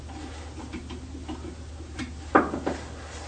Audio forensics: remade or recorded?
recorded